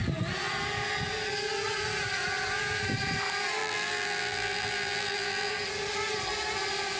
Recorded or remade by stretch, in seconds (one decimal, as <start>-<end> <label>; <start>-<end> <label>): 0.0-3.6 recorded; 3.6-5.5 remade; 5.5-7.0 recorded